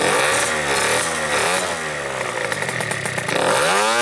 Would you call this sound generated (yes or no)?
no